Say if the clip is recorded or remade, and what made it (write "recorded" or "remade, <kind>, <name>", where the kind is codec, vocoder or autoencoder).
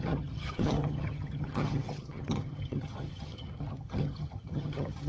remade, vocoder, HiFi-GAN